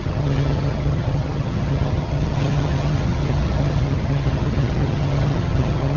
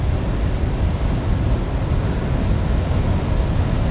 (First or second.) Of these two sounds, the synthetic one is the first